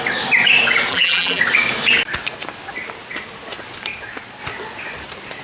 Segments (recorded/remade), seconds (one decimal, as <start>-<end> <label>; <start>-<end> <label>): 0.0-0.9 recorded; 0.9-1.4 remade; 1.4-5.4 recorded